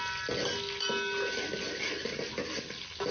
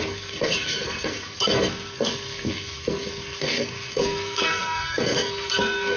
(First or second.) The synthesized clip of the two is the second